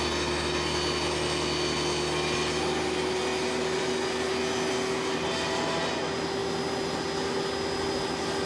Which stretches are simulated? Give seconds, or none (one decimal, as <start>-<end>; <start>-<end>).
none